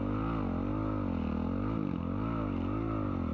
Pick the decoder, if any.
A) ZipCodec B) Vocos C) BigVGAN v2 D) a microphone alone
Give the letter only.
D